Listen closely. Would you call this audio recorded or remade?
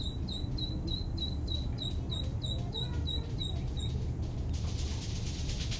recorded